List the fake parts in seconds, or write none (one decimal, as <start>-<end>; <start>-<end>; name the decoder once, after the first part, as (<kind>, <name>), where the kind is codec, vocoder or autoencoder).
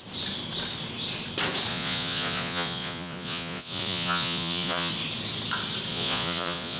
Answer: 1.7-4.9 (vocoder, Vocos); 5.9-6.8